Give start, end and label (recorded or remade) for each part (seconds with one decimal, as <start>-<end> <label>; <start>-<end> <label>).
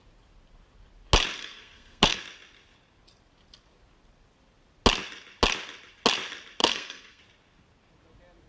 0.0-1.4 recorded; 1.4-2.2 remade; 2.2-6.6 recorded; 6.6-7.2 remade; 7.2-8.5 recorded